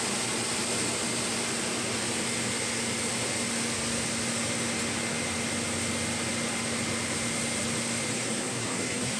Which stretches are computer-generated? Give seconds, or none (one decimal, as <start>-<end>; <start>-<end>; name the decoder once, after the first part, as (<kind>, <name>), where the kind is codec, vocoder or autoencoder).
8.1-9.2 (codec, SNAC)